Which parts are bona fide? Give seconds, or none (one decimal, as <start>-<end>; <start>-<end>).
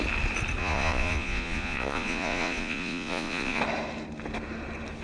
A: 0.0-0.6; 3.6-5.0